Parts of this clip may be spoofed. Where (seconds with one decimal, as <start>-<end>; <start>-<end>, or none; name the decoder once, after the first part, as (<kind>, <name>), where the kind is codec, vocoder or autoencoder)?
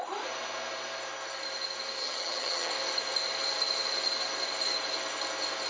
2.0-2.7 (vocoder, HiFi-GAN)